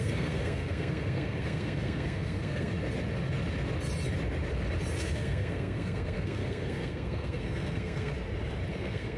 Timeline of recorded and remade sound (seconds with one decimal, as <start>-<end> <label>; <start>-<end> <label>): 0.0-2.7 remade; 2.7-5.0 recorded; 5.0-8.1 remade; 8.1-8.7 recorded; 8.7-9.2 remade